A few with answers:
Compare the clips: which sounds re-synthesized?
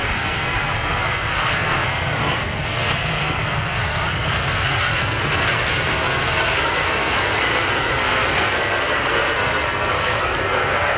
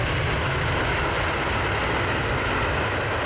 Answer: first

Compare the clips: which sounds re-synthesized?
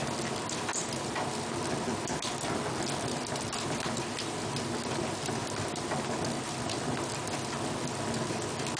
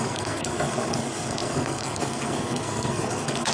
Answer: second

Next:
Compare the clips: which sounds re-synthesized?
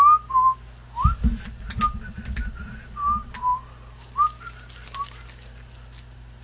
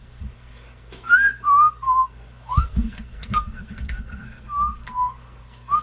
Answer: second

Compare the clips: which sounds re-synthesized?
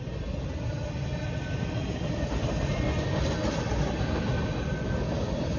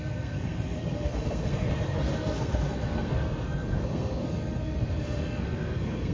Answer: second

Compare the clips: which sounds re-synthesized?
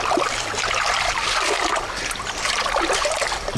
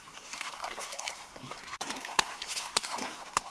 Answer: second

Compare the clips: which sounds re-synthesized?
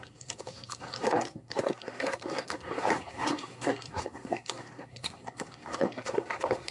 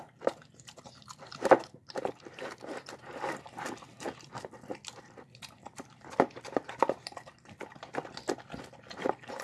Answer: first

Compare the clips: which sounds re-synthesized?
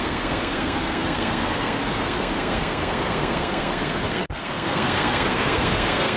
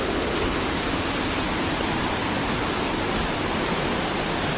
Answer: first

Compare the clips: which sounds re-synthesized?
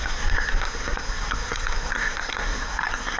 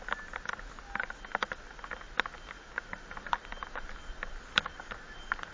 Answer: first